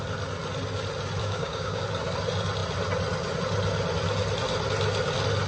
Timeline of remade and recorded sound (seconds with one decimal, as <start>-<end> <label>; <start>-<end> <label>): 0.0-1.2 recorded; 1.2-1.8 remade; 1.8-5.5 recorded